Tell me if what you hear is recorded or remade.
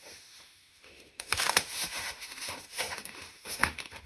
remade